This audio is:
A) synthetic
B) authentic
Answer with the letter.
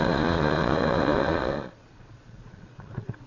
A